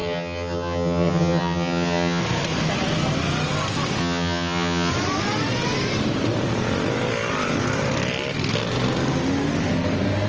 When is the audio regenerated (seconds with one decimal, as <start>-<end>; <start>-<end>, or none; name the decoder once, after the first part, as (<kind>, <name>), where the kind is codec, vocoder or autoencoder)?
0.0-2.2 (vocoder, HiFi-GAN); 4.0-4.9